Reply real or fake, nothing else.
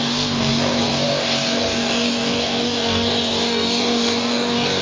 fake